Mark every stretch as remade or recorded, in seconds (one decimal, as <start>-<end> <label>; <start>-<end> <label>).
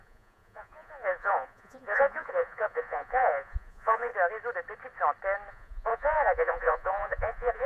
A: 0.0-4.1 remade; 4.1-5.5 recorded; 5.5-7.7 remade